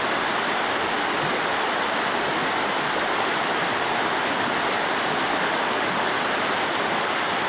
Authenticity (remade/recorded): recorded